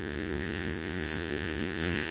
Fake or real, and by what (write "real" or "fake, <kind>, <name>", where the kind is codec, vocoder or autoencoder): fake, vocoder, Vocos